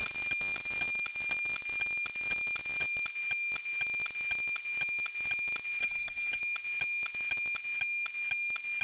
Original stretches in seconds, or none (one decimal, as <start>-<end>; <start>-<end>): 0.0-5.8; 6.4-8.8